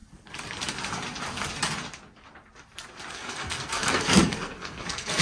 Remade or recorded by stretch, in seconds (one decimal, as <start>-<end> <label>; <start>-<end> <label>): 0.0-3.1 recorded; 3.1-5.2 remade